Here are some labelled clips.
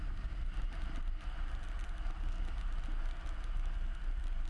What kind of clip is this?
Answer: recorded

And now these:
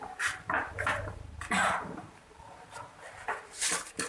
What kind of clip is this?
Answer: remade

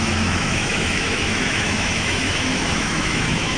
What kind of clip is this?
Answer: remade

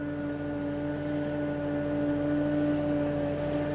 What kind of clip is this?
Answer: recorded